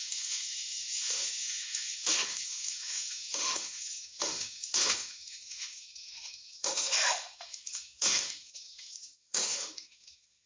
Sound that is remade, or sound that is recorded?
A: remade